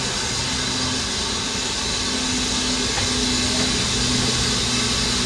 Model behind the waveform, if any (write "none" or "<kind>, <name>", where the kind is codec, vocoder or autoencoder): none